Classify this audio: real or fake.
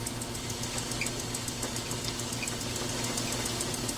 real